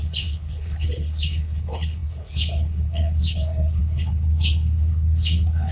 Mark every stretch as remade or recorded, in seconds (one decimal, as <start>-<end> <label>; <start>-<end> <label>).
0.0-5.7 remade

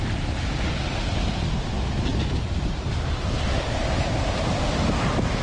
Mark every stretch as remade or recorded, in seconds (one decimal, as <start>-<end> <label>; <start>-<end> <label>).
0.0-2.1 recorded; 2.1-5.4 remade